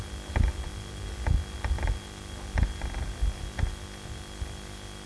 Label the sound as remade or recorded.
recorded